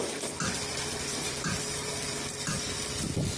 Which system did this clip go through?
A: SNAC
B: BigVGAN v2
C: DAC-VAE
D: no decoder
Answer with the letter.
B